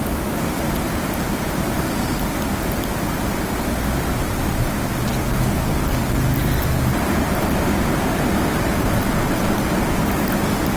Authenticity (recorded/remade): recorded